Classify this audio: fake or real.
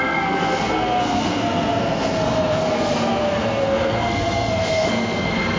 fake